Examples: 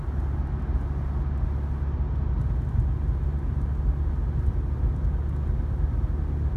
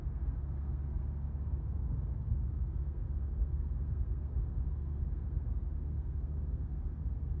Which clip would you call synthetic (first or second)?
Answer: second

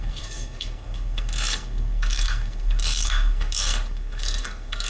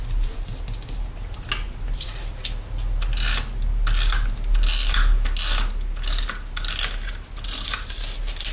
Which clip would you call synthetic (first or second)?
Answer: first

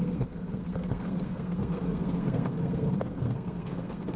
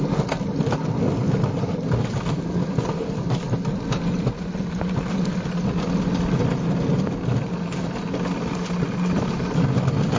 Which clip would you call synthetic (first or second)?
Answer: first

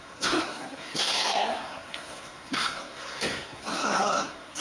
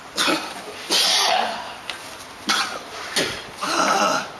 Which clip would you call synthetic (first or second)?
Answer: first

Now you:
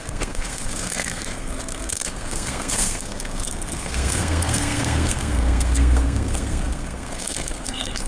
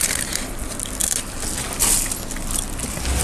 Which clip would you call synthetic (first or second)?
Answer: first